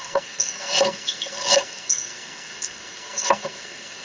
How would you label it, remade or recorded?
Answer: remade